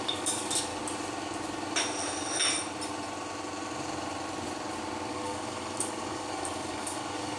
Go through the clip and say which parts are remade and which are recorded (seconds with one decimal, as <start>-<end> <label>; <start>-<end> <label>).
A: 0.0-0.7 remade; 0.7-5.1 recorded; 5.1-7.4 remade